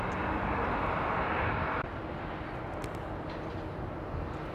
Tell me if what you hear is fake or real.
real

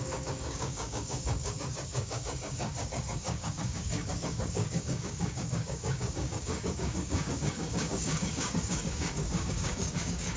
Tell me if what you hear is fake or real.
fake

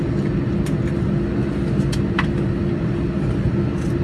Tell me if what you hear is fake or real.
real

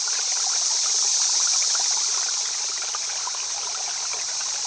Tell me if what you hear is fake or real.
real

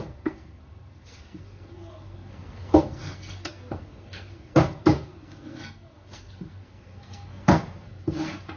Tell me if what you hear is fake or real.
fake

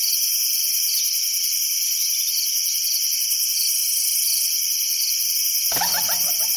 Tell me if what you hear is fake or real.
fake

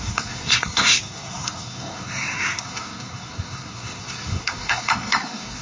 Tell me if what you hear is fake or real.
fake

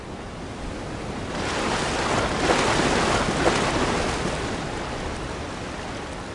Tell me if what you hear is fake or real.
real